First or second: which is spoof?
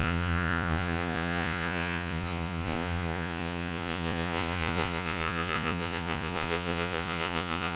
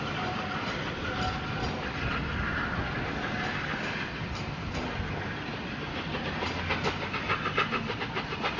first